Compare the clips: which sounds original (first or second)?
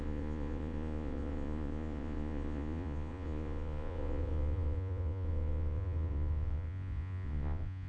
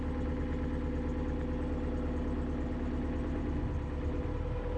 second